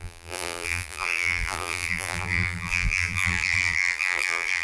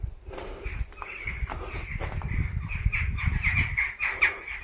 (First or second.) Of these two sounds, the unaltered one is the second